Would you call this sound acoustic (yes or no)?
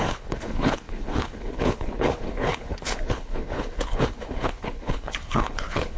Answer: no